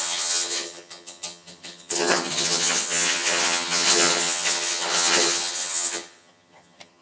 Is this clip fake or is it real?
fake